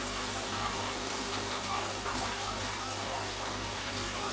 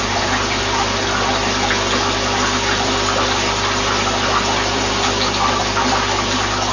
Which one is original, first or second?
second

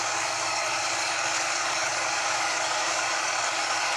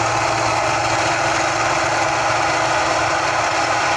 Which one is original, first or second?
second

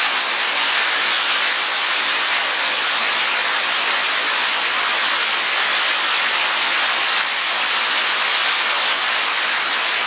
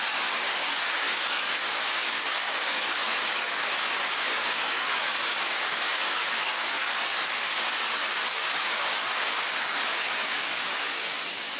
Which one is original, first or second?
first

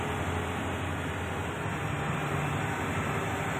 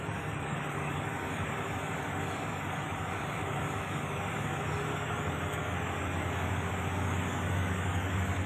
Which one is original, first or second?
first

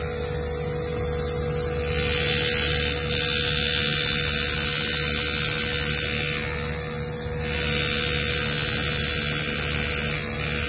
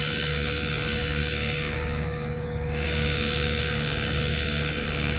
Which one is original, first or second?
first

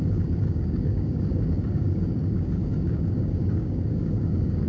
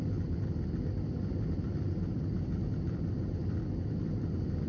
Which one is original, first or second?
second